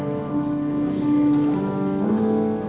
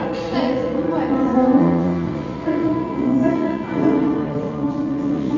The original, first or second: first